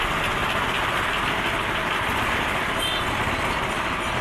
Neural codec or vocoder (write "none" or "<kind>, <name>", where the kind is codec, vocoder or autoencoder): none